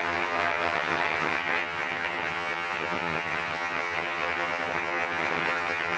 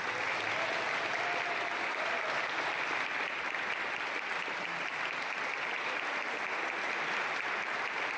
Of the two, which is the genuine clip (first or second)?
second